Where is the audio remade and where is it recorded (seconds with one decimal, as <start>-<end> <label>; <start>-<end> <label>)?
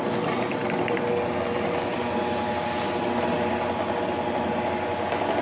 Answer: 0.0-5.4 recorded